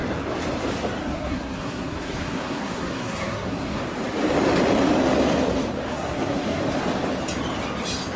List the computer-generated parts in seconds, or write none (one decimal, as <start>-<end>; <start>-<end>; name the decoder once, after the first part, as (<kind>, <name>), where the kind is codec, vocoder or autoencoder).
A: 1.0-3.8 (codec, SNAC); 5.9-6.6